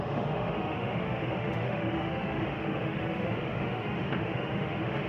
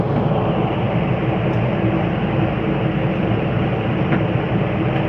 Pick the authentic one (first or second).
second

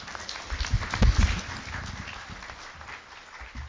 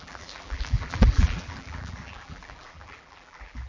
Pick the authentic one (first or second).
first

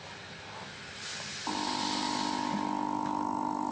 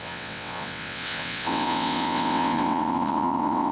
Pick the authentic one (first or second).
first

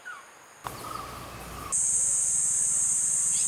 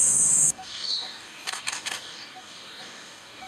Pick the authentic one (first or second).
first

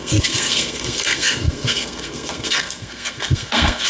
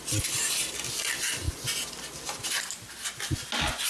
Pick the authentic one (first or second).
second